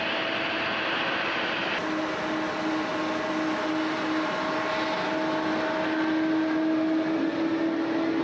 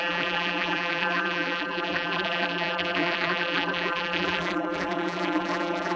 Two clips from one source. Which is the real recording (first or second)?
first